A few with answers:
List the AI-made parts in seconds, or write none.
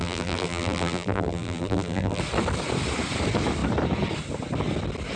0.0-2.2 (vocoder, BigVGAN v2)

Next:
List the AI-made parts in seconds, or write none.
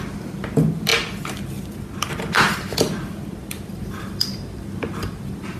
3.4-5.6 (vocoder, BigVGAN v2)